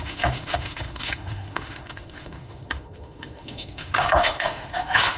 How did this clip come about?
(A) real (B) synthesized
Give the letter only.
B